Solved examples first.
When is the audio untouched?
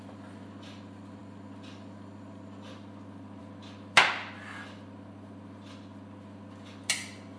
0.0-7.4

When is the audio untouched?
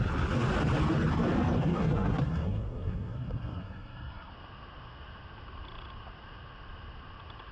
0.0-1.6; 4.3-7.5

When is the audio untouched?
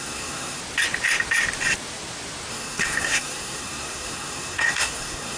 0.6-2.5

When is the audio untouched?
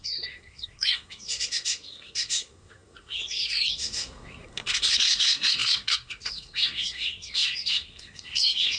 none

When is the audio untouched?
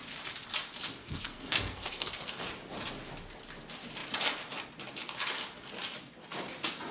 0.0-1.0; 2.5-6.9